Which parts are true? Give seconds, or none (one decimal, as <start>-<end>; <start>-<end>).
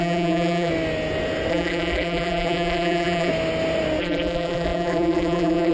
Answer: 0.7-1.5; 3.3-4.0